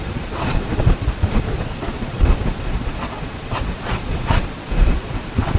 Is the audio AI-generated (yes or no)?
yes